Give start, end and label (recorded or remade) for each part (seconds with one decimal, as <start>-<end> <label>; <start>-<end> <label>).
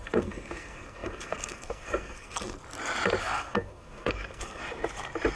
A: 0.0-2.6 remade; 2.6-3.2 recorded; 3.2-4.6 remade; 4.6-5.4 recorded